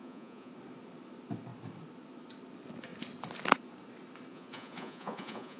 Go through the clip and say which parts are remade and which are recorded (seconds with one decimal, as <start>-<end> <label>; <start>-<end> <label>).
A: 0.0-0.5 remade; 0.5-4.3 recorded; 4.3-5.6 remade